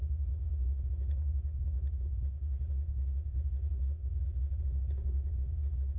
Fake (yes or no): yes